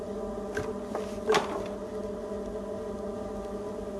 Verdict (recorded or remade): recorded